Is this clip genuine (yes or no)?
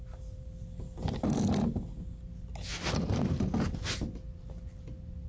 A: yes